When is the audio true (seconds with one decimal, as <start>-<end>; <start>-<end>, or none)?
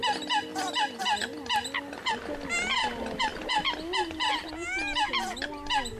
0.0-6.0